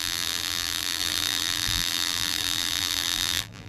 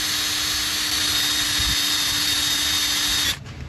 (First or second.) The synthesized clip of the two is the first